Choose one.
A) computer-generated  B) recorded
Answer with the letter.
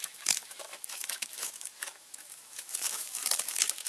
A